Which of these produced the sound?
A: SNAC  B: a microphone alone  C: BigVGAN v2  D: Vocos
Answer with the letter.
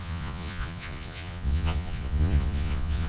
D